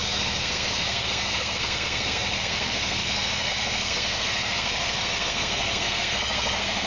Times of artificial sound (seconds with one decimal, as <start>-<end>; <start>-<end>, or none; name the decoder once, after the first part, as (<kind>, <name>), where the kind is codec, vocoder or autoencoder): 0.0-6.9 (codec, SNAC)